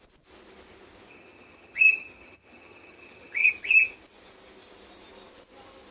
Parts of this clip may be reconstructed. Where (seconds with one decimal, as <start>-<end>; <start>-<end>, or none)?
1.1-3.5